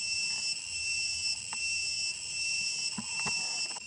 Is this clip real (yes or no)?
no